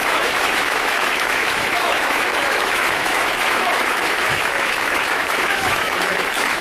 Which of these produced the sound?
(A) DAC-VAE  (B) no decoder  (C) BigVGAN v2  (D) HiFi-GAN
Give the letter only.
A